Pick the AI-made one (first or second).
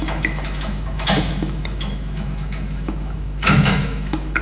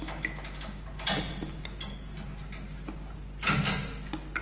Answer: first